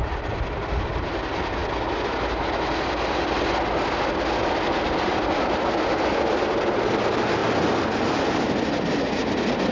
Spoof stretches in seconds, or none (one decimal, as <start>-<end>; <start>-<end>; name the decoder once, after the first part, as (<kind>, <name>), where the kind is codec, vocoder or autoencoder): none